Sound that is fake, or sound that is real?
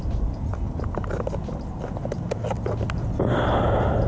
real